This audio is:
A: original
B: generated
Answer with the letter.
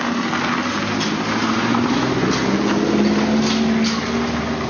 A